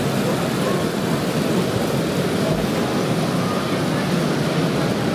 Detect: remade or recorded recorded